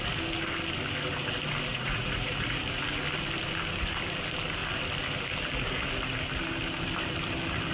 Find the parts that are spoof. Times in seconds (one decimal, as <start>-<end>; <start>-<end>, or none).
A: 1.7-2.6